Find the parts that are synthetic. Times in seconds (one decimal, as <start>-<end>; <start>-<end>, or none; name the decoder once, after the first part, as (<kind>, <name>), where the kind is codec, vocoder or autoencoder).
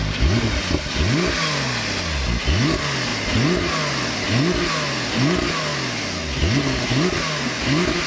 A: none